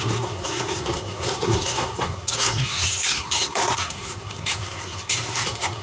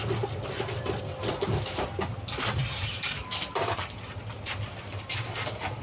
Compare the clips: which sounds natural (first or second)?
second